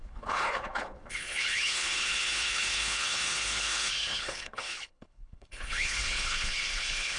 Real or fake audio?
fake